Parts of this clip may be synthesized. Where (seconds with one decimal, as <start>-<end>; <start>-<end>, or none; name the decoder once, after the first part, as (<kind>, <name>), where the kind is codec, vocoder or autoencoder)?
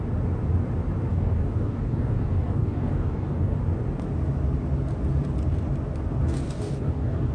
1.1-3.6 (codec, DAC); 6.2-7.3